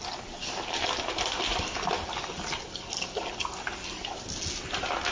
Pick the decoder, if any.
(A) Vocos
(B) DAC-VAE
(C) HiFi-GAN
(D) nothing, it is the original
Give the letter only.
D